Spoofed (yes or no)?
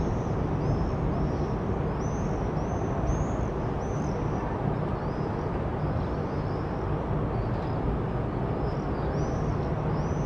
no